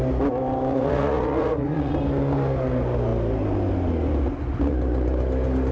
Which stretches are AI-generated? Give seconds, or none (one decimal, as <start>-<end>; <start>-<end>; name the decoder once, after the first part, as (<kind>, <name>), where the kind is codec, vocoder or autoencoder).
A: 0.7-1.9 (vocoder, Vocos)

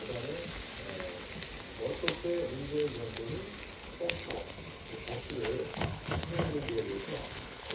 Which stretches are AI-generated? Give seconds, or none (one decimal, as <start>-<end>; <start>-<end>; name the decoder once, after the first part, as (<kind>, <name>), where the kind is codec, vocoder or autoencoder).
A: 3.8-5.2 (codec, HILCodec); 5.7-7.7

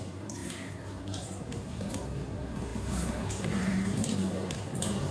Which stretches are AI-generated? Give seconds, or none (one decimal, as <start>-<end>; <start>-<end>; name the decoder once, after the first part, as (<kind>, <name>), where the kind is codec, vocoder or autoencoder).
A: 0.0-5.1 (codec, SNAC)

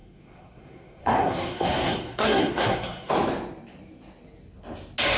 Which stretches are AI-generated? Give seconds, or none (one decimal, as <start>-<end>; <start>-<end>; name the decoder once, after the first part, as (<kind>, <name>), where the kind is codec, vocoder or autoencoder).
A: 0.0-3.1 (codec, SNAC)

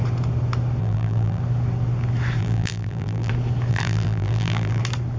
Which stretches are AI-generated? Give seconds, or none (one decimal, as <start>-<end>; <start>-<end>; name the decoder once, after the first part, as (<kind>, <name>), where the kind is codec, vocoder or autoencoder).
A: 0.8-1.4 (vocoder, BigVGAN v2); 2.4-3.3; 3.7-4.8

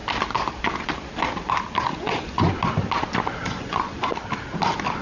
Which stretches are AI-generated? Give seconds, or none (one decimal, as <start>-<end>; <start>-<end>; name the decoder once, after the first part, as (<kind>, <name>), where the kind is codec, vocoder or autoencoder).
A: 1.9-2.5 (vocoder, Vocos); 3.4-4.1